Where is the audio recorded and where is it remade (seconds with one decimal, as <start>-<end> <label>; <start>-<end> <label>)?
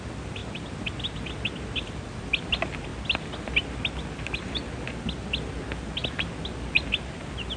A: 0.0-7.6 recorded